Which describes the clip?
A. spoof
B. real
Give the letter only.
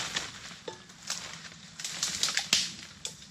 B